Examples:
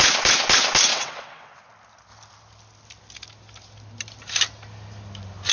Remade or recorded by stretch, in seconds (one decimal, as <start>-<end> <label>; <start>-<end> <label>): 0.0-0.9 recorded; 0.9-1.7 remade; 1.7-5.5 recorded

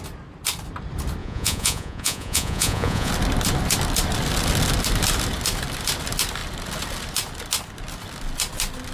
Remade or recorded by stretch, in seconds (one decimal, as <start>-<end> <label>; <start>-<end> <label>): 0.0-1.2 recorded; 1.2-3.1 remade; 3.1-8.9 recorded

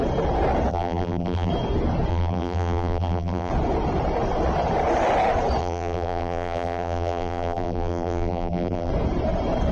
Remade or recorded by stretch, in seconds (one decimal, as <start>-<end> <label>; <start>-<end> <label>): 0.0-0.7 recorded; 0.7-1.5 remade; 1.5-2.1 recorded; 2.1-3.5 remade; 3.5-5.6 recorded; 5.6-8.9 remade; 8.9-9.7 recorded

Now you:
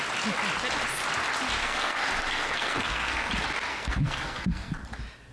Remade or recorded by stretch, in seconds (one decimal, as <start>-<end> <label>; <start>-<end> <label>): 0.0-1.6 recorded; 1.6-3.3 remade; 3.3-3.7 recorded; 3.7-4.7 remade; 4.7-5.3 recorded